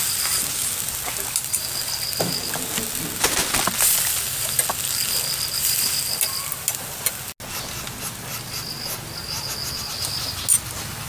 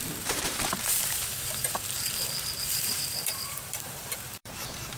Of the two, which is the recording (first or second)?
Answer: first